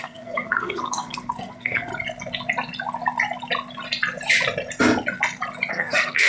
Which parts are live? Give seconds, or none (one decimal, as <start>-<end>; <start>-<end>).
1.9-5.7